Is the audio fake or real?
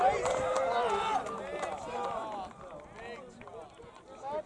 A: real